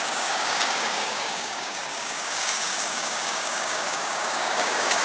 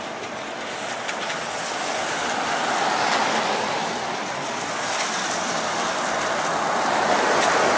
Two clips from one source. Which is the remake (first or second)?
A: first